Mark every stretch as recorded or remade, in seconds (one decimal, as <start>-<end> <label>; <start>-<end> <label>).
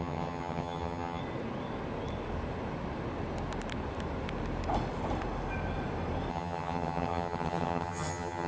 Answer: 0.0-1.2 remade; 1.2-6.3 recorded; 6.3-8.5 remade